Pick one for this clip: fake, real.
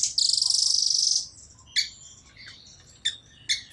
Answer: real